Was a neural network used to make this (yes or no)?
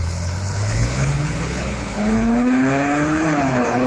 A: yes